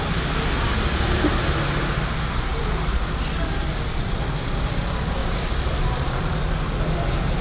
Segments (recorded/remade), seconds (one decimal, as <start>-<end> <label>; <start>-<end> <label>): 0.0-2.5 recorded; 2.5-3.1 remade; 3.1-5.2 recorded; 5.2-6.4 remade; 6.4-7.4 recorded